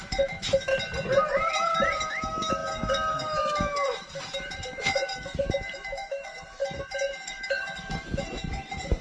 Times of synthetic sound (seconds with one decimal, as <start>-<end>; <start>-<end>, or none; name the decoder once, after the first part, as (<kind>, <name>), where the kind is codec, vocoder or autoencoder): 0.0-0.7 (autoencoder, DAC-VAE); 2.1-9.0